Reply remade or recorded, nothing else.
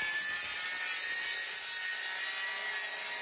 recorded